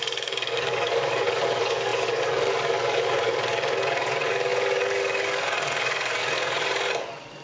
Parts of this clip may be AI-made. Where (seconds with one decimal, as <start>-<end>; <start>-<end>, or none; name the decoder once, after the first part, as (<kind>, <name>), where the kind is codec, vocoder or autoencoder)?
0.0-7.4 (codec, DAC)